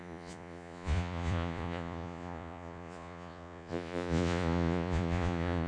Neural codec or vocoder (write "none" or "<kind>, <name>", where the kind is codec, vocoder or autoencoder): vocoder, Vocos